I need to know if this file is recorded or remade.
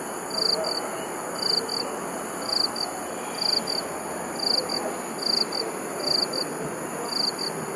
recorded